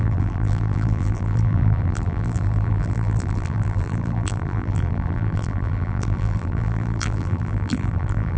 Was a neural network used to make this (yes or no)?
yes